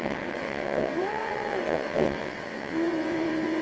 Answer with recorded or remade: remade